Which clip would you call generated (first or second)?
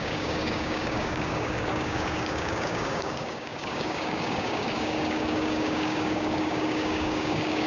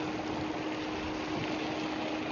first